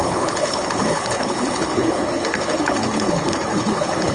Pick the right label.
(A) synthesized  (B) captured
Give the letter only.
A